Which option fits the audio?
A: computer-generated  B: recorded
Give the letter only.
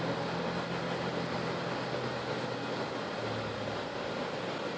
B